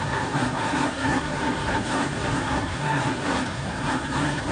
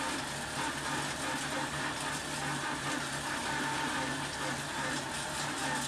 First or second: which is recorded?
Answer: second